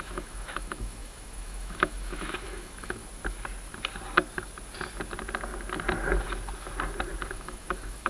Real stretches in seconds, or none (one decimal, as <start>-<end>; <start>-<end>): 3.0-7.3